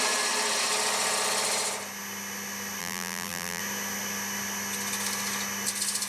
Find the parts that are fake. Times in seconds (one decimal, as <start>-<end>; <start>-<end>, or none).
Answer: 2.8-3.6